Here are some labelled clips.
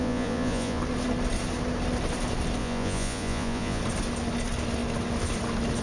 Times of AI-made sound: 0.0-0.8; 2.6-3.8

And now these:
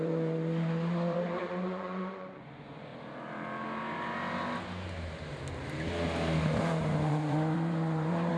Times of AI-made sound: 0.0-2.9; 7.1-8.4

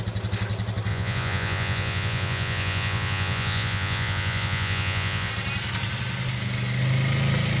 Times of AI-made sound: 0.9-5.3

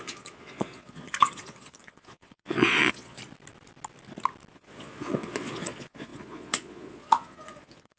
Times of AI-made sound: 0.0-3.2; 4.5-8.0

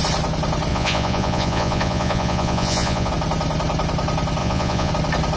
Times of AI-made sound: 0.7-3.1; 4.4-4.9

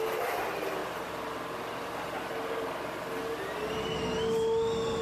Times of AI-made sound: none

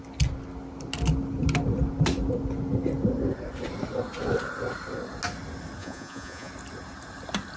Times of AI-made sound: 5.8-6.5